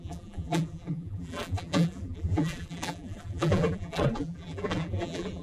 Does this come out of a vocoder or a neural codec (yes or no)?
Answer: yes